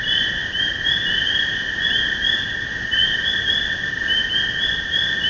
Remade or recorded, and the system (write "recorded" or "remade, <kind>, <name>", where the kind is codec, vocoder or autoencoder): recorded